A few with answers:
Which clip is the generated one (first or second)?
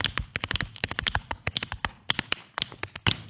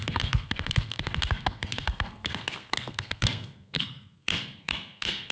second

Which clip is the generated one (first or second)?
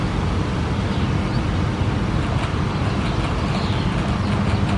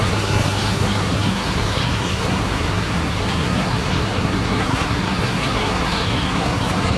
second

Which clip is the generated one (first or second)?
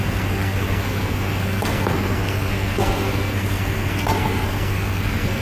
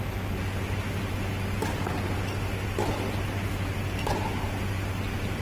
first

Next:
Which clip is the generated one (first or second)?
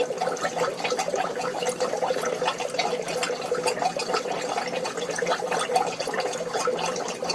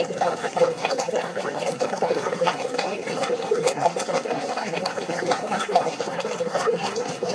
second